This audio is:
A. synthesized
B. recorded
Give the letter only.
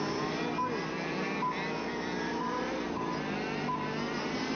B